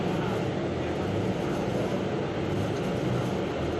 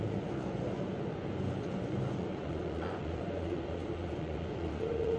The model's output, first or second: second